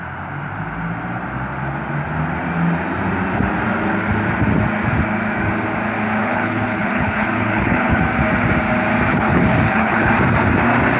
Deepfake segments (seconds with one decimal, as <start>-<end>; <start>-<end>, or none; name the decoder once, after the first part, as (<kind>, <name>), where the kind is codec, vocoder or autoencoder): 6.2-8.0 (codec, HILCodec); 9.1-10.1